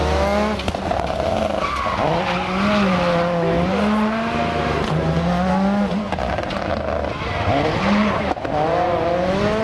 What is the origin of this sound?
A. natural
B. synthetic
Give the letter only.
A